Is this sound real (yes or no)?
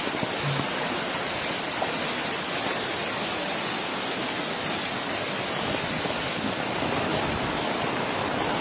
yes